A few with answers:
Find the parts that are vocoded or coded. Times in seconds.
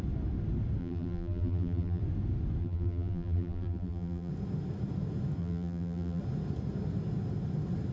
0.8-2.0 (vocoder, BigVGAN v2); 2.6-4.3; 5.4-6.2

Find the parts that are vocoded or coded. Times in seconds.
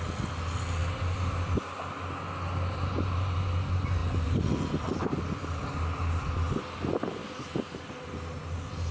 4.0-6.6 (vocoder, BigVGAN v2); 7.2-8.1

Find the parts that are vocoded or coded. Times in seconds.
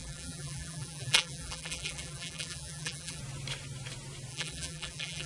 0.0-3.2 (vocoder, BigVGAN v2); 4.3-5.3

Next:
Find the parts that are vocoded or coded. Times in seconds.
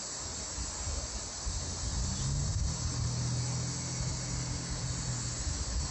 none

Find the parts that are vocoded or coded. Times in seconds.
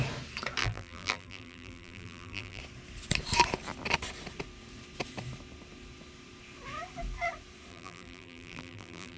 0.6-2.6 (vocoder, BigVGAN v2); 7.7-9.2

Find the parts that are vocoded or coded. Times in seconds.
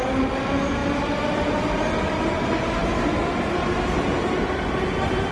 none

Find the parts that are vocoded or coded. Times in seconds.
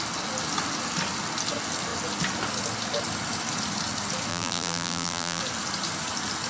4.3-5.4 (vocoder, BigVGAN v2)